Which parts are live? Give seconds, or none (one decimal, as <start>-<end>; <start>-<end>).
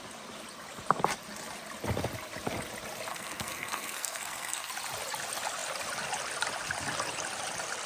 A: 0.0-3.1; 4.7-7.9